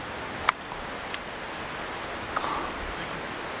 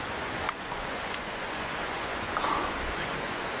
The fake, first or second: second